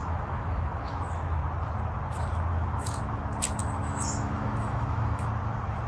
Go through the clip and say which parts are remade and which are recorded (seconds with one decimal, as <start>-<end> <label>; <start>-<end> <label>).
0.0-1.4 remade; 1.4-2.5 recorded; 2.5-3.2 remade; 3.2-3.6 recorded; 3.6-5.3 remade; 5.3-5.9 recorded